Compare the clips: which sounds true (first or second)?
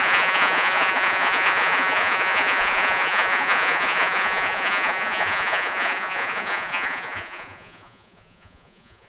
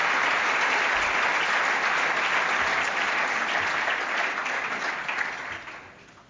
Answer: second